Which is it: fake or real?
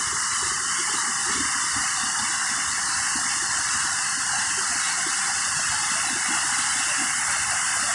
fake